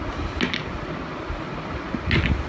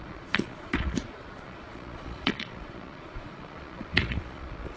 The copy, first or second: second